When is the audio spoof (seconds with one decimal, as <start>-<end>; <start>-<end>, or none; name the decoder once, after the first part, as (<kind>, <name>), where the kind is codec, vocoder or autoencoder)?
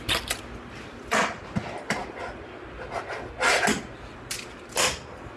none